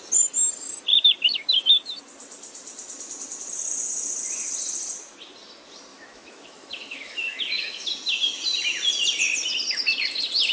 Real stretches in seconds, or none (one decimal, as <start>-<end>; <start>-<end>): 0.0-5.9; 7.9-10.5